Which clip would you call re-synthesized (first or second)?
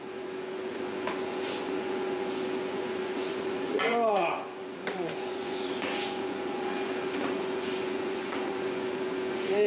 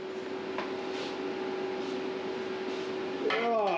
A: first